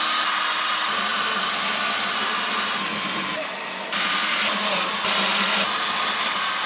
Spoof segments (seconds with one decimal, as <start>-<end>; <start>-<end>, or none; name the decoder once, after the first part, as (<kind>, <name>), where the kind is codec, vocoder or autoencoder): none